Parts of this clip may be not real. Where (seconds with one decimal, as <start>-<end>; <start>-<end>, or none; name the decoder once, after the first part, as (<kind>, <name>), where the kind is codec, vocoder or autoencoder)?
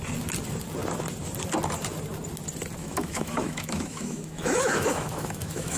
2.8-5.8 (autoencoder, DAC-VAE)